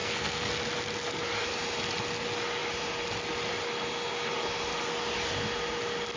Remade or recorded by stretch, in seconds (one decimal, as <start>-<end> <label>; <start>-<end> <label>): 0.0-0.5 remade; 0.5-6.2 recorded